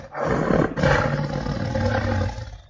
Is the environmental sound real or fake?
real